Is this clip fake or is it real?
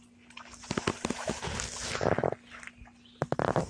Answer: real